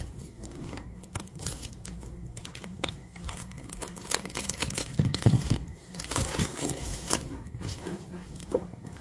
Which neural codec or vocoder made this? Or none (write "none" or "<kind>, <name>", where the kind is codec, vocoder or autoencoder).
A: codec, SNAC